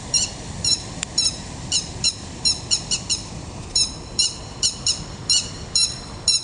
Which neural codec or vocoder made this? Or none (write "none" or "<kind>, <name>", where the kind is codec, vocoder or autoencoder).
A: vocoder, BigVGAN v2